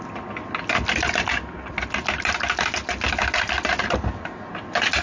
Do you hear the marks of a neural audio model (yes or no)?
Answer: no